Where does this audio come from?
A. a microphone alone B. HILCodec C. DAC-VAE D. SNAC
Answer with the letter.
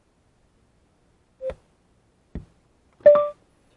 A